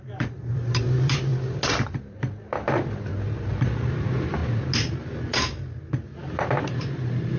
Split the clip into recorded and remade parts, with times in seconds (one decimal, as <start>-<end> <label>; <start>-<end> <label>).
0.0-1.3 remade; 1.3-3.1 recorded; 3.1-4.4 remade; 4.4-6.6 recorded; 6.6-7.4 remade

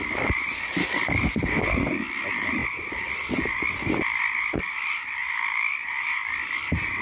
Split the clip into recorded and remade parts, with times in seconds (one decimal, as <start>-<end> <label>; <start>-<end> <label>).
0.0-7.0 remade

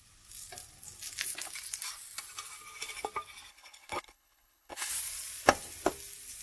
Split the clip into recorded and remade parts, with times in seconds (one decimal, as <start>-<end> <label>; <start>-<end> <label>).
0.0-3.5 recorded; 3.5-4.9 remade; 4.9-6.4 recorded

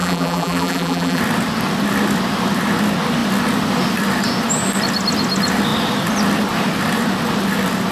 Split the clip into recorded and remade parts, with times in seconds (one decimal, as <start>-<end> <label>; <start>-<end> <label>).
0.0-1.2 remade; 1.2-7.9 recorded